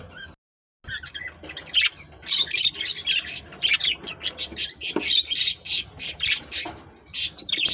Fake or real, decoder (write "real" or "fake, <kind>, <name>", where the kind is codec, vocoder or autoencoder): real